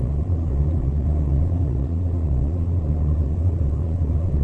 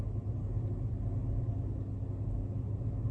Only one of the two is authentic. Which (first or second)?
second